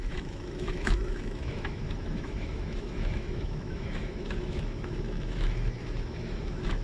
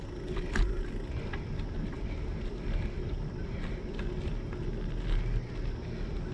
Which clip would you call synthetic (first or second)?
first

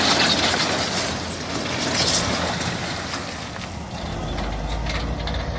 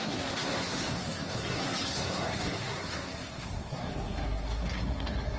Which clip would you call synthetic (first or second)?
second